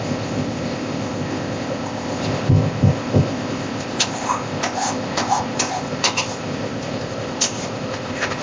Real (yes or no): no